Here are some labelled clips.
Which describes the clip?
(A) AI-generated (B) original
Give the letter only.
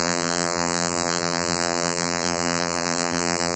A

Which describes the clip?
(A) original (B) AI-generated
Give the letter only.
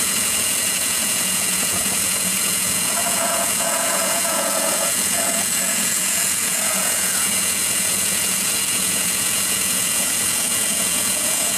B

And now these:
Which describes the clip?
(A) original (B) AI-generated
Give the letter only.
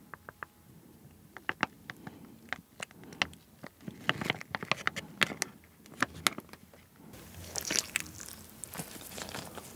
A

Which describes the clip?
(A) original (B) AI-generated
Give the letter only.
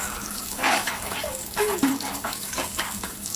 B